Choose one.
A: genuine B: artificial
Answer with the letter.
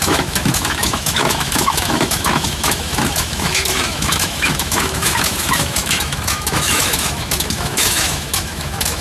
B